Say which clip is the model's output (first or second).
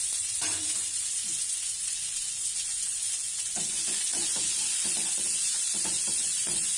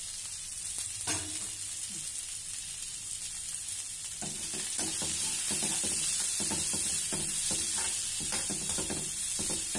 first